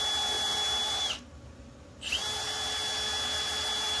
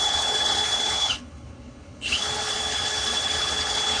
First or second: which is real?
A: first